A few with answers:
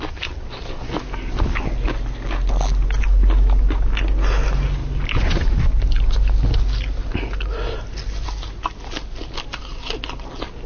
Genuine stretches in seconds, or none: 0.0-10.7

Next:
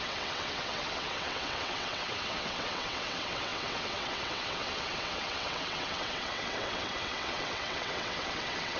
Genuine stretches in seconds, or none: none

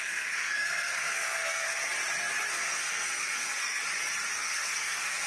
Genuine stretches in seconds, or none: 1.9-2.5; 3.8-4.3